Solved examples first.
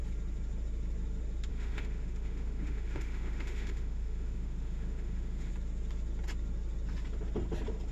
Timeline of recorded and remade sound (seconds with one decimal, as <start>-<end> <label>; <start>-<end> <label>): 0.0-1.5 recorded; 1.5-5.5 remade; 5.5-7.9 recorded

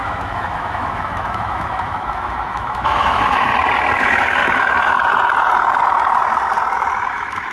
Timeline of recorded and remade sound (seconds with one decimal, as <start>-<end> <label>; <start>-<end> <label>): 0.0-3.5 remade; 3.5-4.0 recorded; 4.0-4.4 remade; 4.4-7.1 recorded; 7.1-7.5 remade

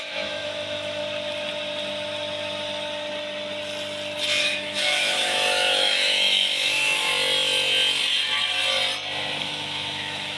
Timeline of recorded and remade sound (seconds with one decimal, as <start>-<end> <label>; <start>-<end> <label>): 0.0-1.0 remade; 1.0-4.4 recorded; 4.4-7.1 remade; 7.1-9.4 recorded; 9.4-10.4 remade

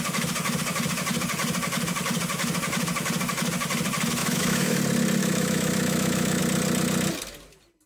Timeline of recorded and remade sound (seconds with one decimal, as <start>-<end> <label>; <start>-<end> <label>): 0.0-4.2 recorded; 4.2-4.8 remade; 4.8-5.2 recorded; 5.2-6.4 remade; 6.4-7.9 recorded

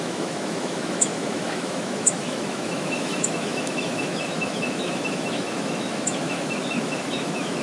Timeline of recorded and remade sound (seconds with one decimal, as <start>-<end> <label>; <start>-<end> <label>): 0.0-7.6 remade

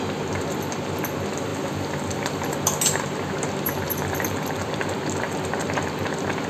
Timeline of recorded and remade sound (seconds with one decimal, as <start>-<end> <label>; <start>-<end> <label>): 0.0-6.5 recorded

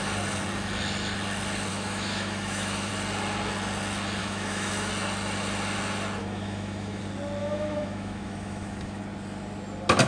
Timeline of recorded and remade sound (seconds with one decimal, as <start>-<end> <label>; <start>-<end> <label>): 0.0-1.7 recorded; 1.7-2.9 remade; 2.9-4.2 recorded; 4.2-4.9 remade; 4.9-6.2 recorded; 6.2-7.0 remade; 7.0-7.4 recorded; 7.4-9.0 remade; 9.0-10.1 recorded

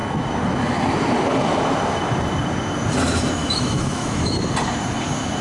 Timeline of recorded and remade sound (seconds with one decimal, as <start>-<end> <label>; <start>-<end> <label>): 0.0-3.4 recorded; 3.4-4.5 remade; 4.5-5.4 recorded